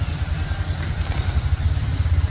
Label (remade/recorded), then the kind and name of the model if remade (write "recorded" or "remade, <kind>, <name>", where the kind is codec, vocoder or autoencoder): recorded